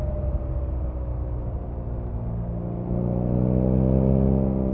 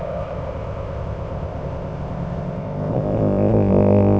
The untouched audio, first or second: first